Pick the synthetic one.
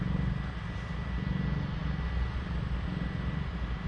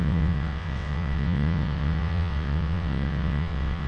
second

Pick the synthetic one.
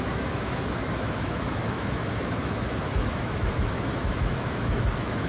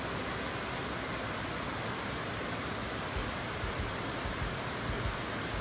first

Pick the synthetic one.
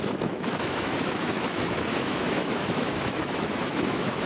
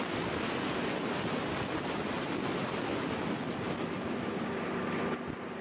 first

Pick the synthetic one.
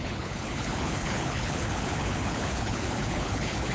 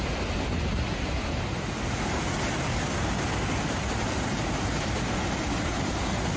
first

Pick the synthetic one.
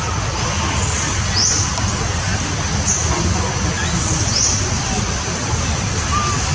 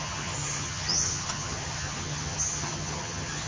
second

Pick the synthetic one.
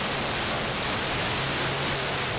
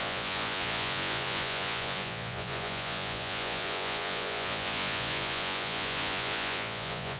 second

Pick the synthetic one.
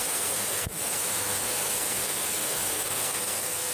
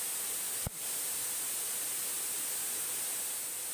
first